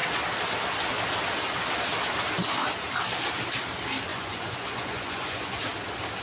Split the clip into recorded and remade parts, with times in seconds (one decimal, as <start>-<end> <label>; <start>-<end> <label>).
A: 0.0-4.1 recorded; 4.1-5.6 remade; 5.6-6.2 recorded

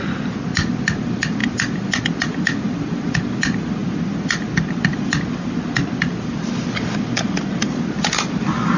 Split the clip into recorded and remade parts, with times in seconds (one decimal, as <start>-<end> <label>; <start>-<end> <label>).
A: 0.0-8.8 recorded

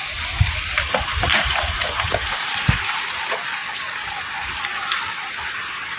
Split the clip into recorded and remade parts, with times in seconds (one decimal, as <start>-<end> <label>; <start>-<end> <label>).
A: 0.0-1.3 recorded; 1.3-2.9 remade; 2.9-6.0 recorded

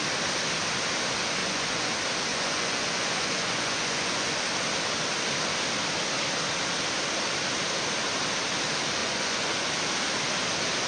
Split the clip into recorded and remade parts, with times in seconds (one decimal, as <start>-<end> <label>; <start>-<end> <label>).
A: 0.0-1.4 recorded; 1.4-1.9 remade; 1.9-2.3 recorded; 2.3-4.4 remade; 4.4-9.0 recorded; 9.0-9.7 remade; 9.7-10.9 recorded

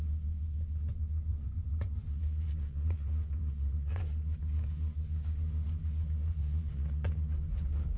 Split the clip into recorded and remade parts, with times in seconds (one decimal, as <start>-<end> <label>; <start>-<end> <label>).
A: 0.0-1.3 recorded; 1.3-4.0 remade; 4.0-6.3 recorded; 6.3-7.1 remade; 7.1-8.0 recorded